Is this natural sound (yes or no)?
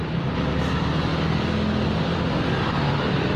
yes